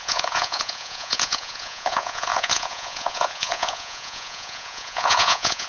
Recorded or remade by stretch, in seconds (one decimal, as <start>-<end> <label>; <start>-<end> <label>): 0.0-5.7 remade